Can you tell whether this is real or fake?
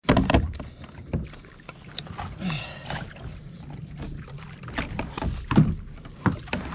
real